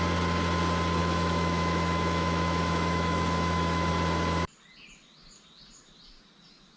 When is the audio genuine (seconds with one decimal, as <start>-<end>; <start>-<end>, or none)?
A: 0.0-1.0; 3.9-6.8